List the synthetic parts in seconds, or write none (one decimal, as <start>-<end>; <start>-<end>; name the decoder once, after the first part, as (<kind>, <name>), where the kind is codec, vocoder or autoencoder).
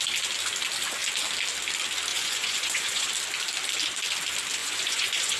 2.1-3.1 (vocoder, Vocos); 4.6-5.4